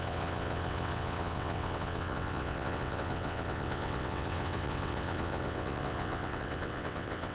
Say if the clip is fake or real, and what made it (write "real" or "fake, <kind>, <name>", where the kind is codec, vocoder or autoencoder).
fake, vocoder, WaveNeXt